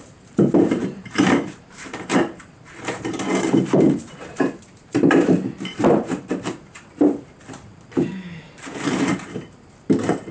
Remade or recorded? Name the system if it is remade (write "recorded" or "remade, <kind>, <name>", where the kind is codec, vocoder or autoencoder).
remade, vocoder, BigVGAN v2